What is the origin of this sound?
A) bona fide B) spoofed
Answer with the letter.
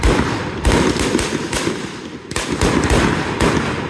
A